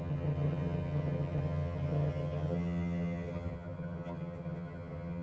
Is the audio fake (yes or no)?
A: yes